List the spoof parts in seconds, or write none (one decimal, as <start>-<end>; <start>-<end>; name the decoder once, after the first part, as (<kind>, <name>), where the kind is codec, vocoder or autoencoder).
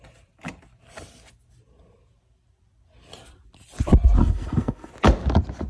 4.2-4.9 (codec, SNAC)